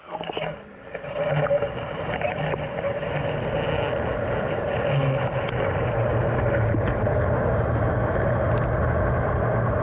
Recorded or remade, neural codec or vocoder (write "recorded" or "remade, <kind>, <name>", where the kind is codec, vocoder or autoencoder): recorded